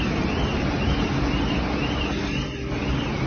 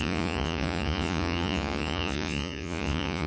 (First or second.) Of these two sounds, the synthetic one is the second